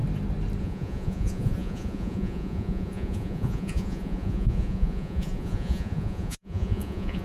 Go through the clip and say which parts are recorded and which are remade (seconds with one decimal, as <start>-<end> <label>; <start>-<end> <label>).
0.0-0.6 recorded; 0.6-7.2 remade